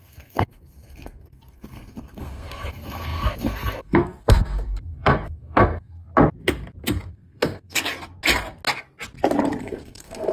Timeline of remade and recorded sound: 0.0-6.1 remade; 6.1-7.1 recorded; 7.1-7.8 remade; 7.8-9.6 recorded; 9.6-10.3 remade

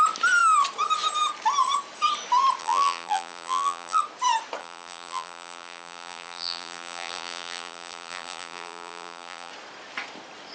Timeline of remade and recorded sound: 0.0-2.6 recorded; 2.6-4.0 remade; 4.0-4.6 recorded; 4.6-9.5 remade; 9.5-10.5 recorded

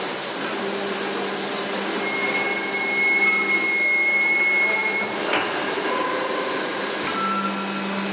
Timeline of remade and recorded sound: 0.0-8.1 recorded

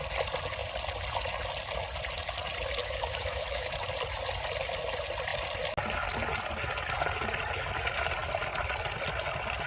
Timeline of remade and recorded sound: 0.0-2.8 recorded; 2.8-3.7 remade; 3.7-9.7 recorded

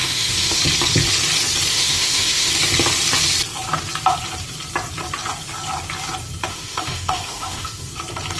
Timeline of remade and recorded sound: 0.0-0.6 remade; 0.6-1.7 recorded; 1.7-2.5 remade; 2.5-6.5 recorded; 6.5-7.9 remade; 7.9-8.4 recorded

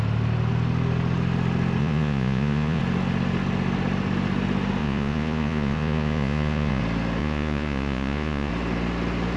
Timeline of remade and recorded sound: 0.0-1.8 recorded; 1.8-2.8 remade; 2.8-4.8 recorded; 4.8-6.8 remade; 6.8-7.2 recorded; 7.2-8.5 remade; 8.5-9.4 recorded

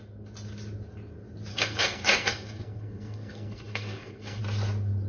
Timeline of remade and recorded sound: 0.0-1.5 recorded; 1.5-4.4 remade; 4.4-5.1 recorded

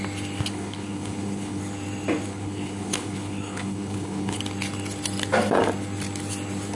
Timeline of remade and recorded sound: 0.0-0.5 recorded; 0.5-1.6 remade; 1.6-2.3 recorded; 2.3-4.4 remade; 4.4-6.8 recorded